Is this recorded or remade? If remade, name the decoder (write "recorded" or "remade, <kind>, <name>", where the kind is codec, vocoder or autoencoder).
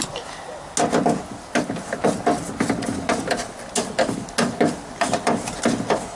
recorded